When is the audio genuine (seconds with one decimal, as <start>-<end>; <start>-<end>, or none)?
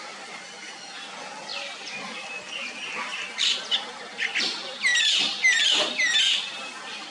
0.0-1.5; 2.5-7.1